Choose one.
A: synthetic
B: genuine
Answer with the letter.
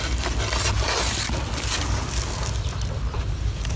B